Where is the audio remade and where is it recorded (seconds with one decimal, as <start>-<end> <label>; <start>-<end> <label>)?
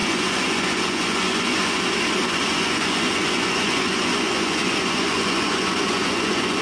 0.0-1.8 remade; 1.8-2.2 recorded; 2.2-6.6 remade